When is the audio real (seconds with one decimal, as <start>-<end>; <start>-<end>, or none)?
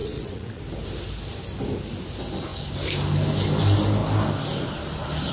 0.6-5.3